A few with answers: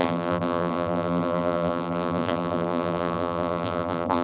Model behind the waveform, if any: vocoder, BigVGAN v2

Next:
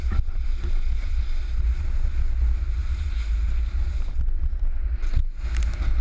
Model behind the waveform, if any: none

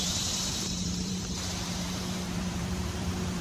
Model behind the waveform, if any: vocoder, BigVGAN v2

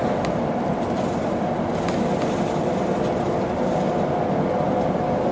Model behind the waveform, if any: none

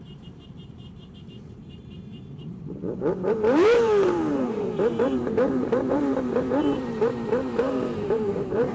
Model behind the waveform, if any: vocoder, BigVGAN v2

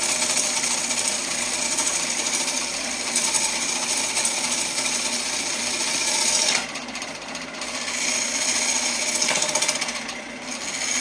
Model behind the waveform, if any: none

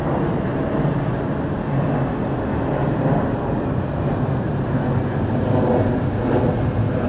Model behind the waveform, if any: none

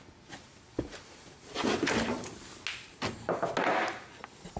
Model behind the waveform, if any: none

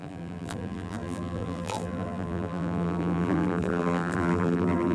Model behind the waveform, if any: vocoder, BigVGAN v2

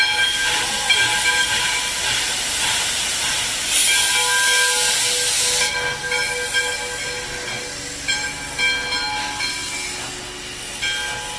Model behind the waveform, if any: none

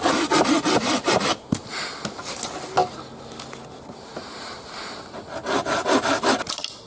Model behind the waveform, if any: none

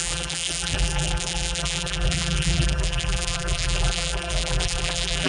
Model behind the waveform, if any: vocoder, BigVGAN v2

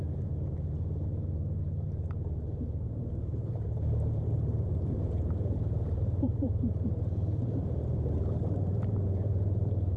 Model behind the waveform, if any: vocoder, BigVGAN v2